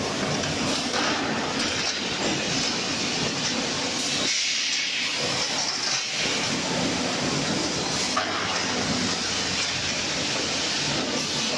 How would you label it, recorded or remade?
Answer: recorded